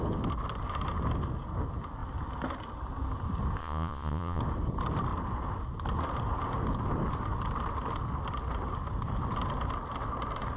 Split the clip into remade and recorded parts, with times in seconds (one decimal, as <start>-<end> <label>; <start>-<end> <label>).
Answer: 0.0-3.6 recorded; 3.6-4.4 remade; 4.4-10.6 recorded